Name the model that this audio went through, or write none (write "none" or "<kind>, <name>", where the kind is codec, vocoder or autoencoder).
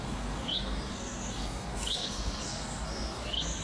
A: codec, SNAC